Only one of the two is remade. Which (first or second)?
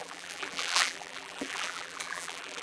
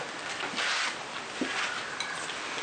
first